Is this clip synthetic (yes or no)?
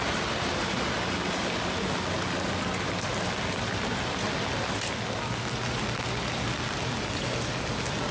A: no